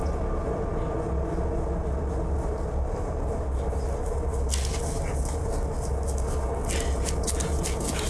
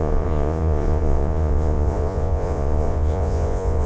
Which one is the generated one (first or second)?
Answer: second